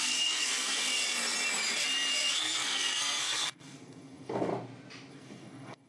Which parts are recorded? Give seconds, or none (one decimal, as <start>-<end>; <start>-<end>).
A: 0.9-2.3; 4.5-5.1